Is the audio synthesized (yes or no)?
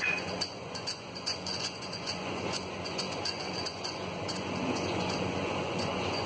yes